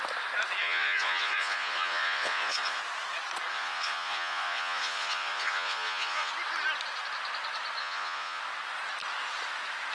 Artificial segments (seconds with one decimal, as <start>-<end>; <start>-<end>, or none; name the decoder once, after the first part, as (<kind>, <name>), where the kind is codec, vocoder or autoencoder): 0.6-2.8 (vocoder, Vocos); 3.5-6.3; 7.8-8.4